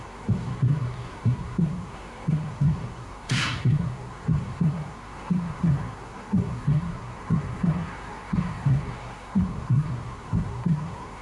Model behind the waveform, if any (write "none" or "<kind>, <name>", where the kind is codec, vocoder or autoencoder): codec, SNAC